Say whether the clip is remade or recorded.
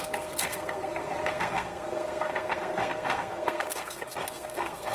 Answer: remade